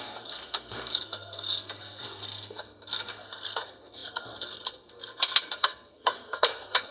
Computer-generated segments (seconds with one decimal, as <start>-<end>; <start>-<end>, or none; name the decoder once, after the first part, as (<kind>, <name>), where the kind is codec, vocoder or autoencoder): 0.0-6.9 (codec, SNAC)